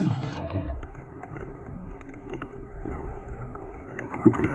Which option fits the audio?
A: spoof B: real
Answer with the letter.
A